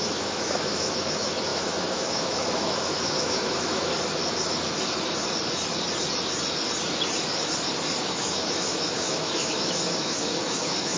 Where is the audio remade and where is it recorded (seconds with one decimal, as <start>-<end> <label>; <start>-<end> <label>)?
0.0-3.9 remade; 3.9-8.0 recorded; 8.0-11.0 remade